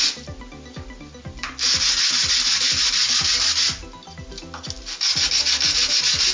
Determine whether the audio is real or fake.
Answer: real